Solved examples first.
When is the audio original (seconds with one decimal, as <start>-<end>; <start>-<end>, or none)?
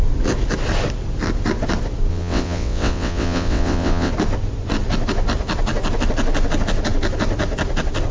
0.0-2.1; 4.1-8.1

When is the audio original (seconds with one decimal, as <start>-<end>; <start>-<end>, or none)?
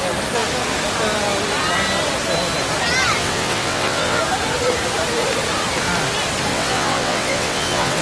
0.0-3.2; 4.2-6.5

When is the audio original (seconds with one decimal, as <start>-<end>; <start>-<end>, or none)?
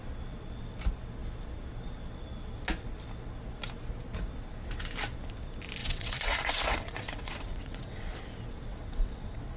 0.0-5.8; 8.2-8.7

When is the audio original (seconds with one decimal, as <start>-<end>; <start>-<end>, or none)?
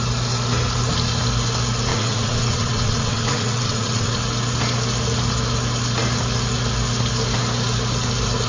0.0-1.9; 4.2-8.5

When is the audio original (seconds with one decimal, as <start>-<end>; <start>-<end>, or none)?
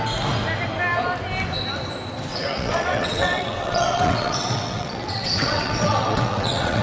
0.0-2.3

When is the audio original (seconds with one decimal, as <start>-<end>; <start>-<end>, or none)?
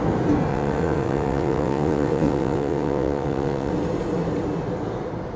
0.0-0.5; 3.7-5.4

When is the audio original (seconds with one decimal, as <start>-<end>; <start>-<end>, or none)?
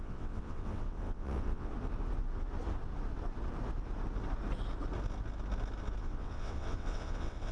1.7-6.0